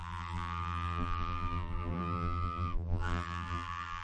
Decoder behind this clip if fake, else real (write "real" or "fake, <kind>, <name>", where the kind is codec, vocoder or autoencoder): fake, vocoder, BigVGAN v2